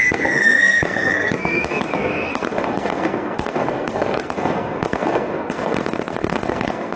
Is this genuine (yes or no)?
no